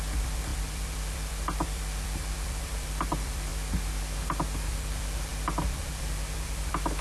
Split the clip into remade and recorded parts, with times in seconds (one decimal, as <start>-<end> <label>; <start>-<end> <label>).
0.0-3.5 remade; 3.5-4.7 recorded; 4.7-7.0 remade